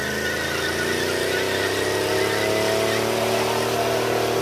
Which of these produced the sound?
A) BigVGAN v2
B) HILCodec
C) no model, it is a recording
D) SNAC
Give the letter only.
C